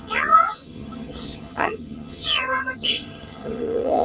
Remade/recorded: remade